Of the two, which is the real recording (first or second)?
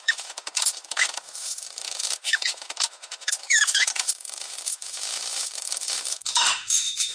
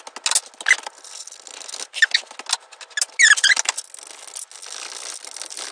second